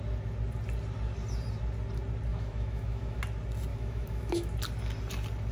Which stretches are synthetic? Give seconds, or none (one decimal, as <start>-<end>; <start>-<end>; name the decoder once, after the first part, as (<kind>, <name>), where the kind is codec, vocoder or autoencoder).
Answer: 2.3-3.2 (autoencoder, DAC-VAE); 3.7-4.5